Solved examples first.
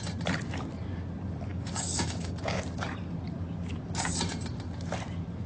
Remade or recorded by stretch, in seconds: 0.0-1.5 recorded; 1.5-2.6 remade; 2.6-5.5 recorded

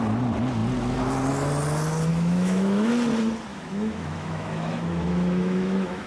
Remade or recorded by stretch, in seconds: 0.0-2.1 recorded; 2.1-2.9 remade; 2.9-3.5 recorded; 3.5-6.1 remade